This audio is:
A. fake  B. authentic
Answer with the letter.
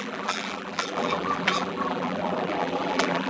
A